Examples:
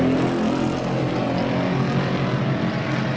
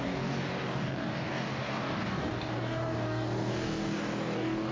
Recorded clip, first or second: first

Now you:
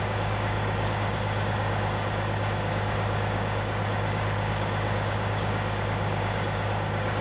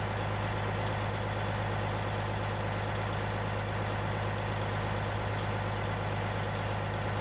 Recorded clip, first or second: second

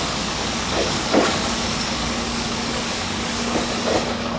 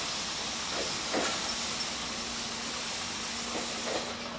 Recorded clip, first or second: second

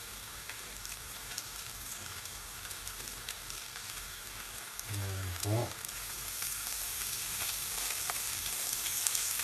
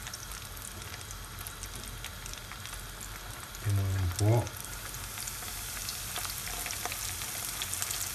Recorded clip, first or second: second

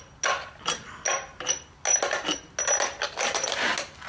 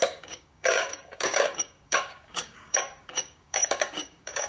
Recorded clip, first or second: first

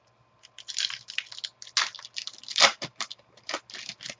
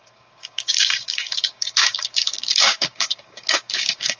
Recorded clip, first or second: first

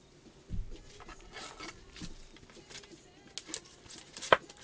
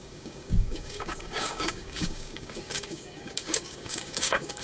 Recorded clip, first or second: first